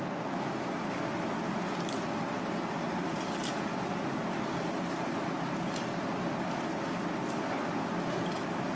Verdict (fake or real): real